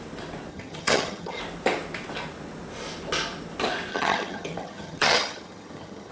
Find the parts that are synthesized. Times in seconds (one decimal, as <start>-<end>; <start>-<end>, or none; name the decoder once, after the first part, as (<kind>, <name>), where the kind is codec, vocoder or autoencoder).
0.5-1.4 (vocoder, HiFi-GAN); 3.9-6.1